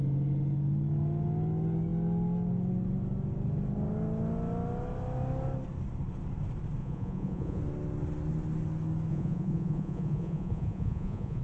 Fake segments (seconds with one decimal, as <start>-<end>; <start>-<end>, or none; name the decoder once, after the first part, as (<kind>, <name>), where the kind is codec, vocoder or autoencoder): 6.8-7.6 (vocoder, Vocos); 9.1-11.4